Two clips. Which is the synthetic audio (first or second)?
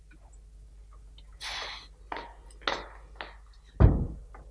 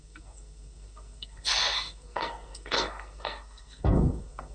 second